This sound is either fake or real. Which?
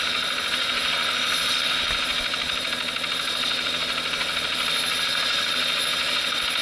real